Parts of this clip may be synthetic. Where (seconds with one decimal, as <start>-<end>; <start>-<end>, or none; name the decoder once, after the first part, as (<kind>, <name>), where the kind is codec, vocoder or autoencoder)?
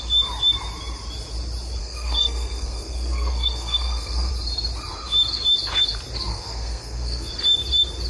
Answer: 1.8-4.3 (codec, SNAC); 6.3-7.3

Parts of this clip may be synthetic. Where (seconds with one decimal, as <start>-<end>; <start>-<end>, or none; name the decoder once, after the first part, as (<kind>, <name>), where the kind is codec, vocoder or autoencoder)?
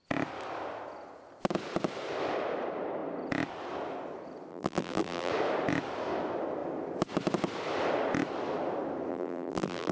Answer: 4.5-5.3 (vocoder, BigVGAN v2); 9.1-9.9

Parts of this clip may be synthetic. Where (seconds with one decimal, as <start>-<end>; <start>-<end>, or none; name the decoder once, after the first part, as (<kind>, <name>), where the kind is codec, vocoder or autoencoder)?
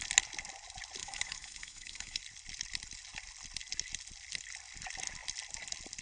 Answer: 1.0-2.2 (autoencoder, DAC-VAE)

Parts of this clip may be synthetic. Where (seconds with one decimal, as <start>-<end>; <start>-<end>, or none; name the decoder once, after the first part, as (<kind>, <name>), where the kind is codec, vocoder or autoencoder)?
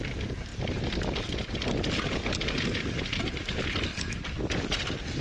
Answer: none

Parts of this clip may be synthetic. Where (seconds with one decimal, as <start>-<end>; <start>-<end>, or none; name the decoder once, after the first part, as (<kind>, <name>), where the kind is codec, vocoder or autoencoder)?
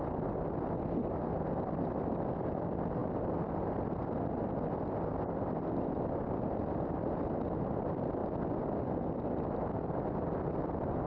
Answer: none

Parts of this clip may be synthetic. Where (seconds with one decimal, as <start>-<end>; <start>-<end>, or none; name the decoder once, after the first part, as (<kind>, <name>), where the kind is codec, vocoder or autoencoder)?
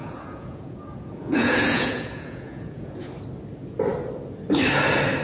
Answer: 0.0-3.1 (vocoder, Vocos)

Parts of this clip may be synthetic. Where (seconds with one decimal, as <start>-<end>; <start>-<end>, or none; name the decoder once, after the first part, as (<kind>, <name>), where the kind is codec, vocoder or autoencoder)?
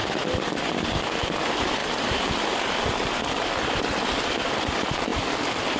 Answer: 0.0-1.8 (vocoder, BigVGAN v2); 2.5-5.8